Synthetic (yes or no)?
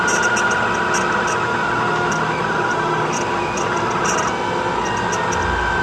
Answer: no